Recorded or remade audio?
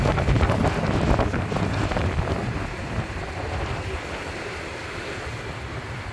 recorded